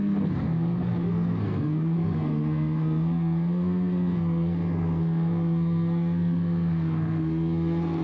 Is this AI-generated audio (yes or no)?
yes